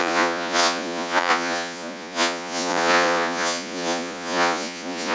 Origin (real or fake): fake